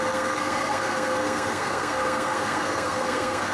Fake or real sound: fake